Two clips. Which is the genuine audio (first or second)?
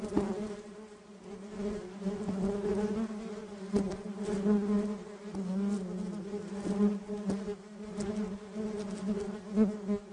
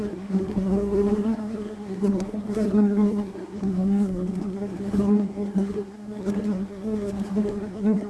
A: first